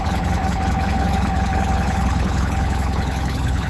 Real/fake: fake